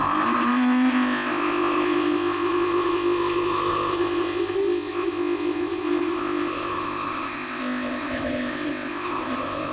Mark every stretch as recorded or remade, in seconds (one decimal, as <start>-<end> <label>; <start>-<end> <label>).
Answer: 0.0-9.7 remade